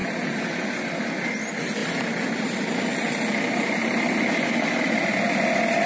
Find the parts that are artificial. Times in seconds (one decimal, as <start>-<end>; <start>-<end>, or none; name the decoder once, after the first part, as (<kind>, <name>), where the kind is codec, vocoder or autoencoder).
none